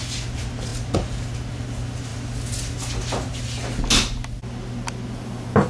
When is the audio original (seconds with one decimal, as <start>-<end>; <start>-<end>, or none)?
0.0-5.7